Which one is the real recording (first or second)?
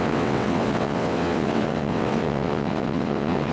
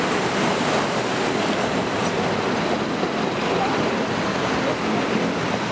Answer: second